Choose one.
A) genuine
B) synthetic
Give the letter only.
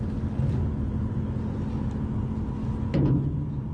A